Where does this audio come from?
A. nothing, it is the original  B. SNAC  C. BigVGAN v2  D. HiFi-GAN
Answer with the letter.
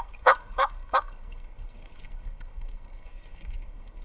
B